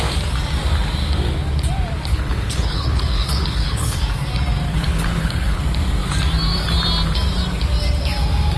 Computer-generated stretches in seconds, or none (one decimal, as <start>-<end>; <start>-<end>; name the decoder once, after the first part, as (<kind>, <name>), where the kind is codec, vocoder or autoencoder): 2.1-4.0 (codec, HILCodec); 4.7-5.6